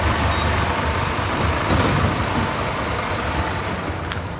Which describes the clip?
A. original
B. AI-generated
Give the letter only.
A